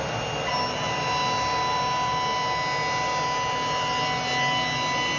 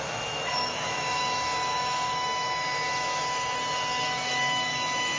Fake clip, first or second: second